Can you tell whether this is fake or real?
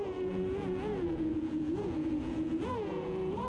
fake